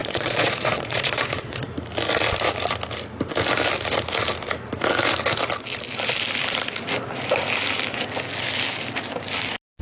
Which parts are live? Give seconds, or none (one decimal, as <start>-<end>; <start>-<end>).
1.7-9.8